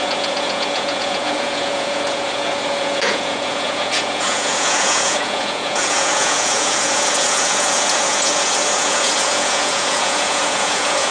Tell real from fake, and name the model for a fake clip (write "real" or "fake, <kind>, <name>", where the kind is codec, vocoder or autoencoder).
fake, vocoder, Vocos